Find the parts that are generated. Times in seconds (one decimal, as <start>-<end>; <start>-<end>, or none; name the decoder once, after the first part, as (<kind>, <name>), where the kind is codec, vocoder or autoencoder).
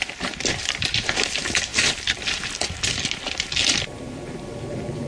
0.0-1.7 (vocoder, BigVGAN v2); 4.0-5.1